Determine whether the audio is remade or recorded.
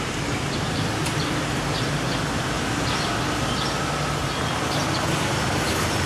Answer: recorded